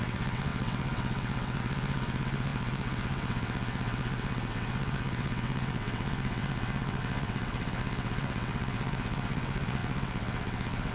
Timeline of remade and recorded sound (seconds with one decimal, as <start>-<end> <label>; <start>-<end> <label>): 0.0-10.9 remade